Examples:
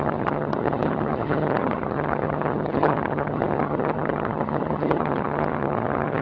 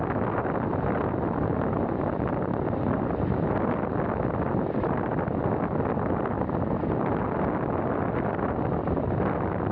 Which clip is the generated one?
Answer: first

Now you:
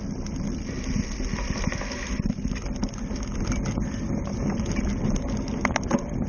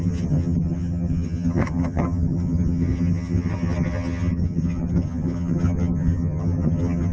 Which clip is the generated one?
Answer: second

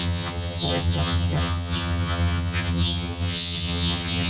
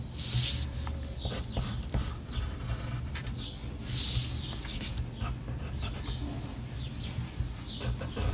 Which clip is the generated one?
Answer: first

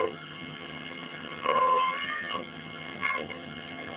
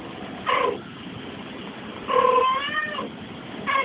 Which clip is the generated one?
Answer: first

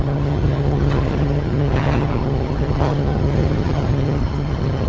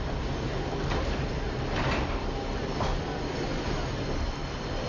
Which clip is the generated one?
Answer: first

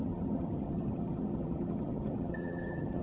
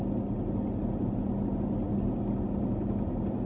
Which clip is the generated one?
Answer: first